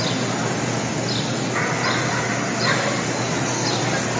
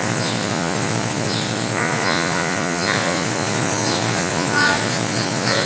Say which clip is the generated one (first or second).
second